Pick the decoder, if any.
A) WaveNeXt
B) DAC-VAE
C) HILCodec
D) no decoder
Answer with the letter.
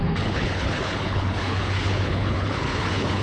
C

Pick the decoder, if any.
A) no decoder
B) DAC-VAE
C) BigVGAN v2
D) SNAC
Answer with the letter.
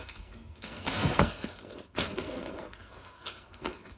D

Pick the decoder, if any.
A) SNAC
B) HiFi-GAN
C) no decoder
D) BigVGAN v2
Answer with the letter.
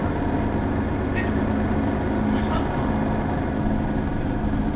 C